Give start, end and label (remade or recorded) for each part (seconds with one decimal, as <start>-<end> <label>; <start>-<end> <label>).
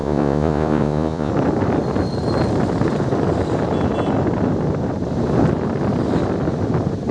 0.0-1.3 remade; 1.3-7.1 recorded